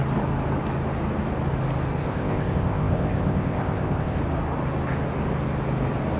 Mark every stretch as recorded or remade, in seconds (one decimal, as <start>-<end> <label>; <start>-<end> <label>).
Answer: 0.0-2.0 recorded; 2.0-4.2 remade; 4.2-6.2 recorded